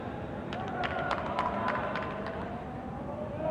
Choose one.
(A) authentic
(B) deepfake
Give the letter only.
A